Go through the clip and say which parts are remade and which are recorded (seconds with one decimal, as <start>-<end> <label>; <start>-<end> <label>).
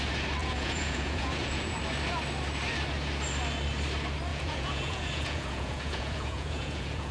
0.0-0.4 recorded; 0.4-1.8 remade; 1.8-4.3 recorded; 4.3-7.1 remade